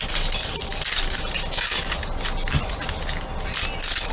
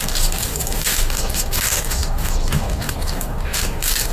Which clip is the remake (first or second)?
second